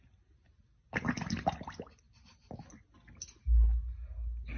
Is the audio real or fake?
real